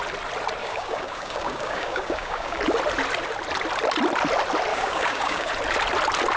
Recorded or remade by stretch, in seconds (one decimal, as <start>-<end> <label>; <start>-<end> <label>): 0.0-0.6 recorded; 0.6-2.6 remade; 2.6-4.7 recorded; 4.7-5.5 remade; 5.5-6.4 recorded